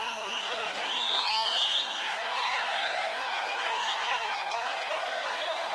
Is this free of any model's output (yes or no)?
no